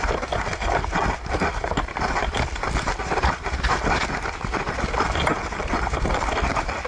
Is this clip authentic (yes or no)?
yes